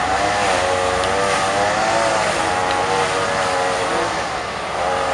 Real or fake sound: real